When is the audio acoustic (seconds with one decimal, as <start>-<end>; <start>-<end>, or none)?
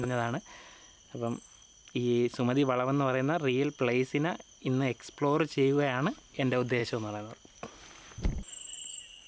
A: 0.0-9.3